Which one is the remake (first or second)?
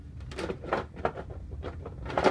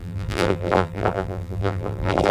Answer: second